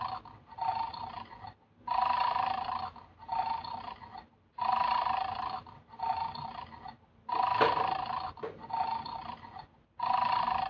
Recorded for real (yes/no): yes